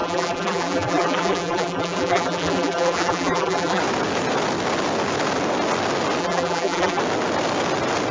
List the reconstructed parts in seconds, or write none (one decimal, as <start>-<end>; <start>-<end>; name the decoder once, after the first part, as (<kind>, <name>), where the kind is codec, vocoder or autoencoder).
0.0-3.8 (vocoder, BigVGAN v2); 6.2-7.0